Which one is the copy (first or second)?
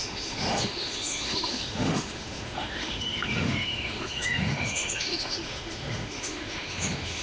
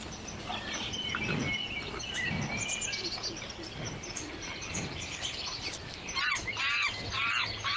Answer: first